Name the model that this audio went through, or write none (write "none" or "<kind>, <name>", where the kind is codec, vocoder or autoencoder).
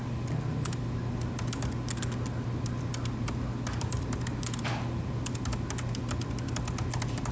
none